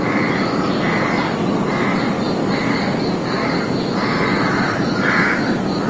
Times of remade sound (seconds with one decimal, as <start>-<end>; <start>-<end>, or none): 2.4-3.5